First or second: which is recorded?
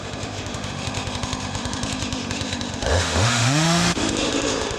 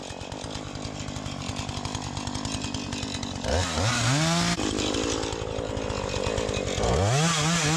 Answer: second